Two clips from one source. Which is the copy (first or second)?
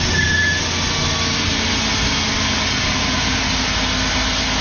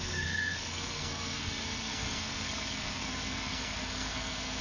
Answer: second